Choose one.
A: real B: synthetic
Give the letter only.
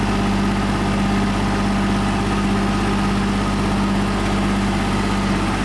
A